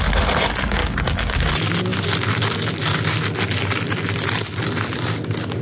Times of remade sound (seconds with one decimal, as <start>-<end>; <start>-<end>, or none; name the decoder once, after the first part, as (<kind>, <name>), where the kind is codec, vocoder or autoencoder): 0.8-1.5 (codec, DAC)